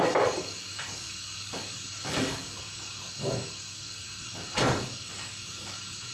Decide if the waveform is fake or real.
fake